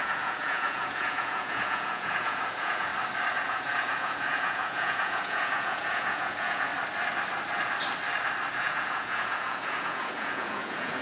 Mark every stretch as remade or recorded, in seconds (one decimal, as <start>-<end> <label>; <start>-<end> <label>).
0.0-2.9 remade; 2.9-3.4 recorded; 3.4-6.7 remade; 6.7-8.5 recorded; 8.5-11.0 remade